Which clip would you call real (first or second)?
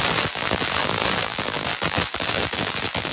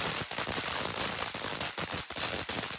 second